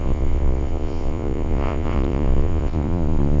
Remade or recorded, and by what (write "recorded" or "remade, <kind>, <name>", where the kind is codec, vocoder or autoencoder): remade, vocoder, Vocos